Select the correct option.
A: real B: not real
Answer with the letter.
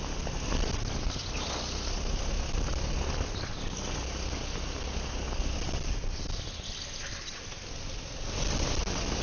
A